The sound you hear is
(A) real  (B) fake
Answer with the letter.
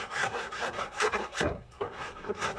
B